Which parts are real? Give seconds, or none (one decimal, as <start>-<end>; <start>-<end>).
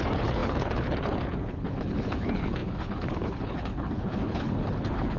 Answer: none